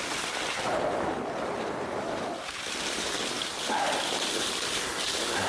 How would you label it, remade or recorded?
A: recorded